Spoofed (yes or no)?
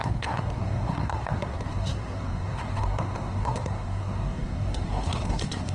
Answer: yes